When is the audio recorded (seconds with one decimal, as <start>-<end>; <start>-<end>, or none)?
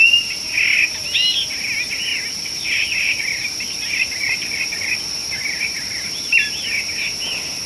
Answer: 0.0-2.1; 6.7-7.7